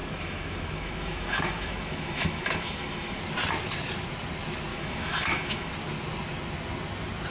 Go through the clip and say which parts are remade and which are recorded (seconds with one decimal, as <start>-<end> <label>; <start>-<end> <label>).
0.0-3.2 remade; 3.2-4.7 recorded; 4.7-5.7 remade; 5.7-7.3 recorded